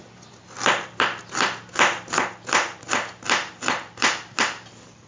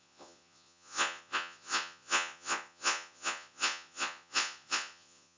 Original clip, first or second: first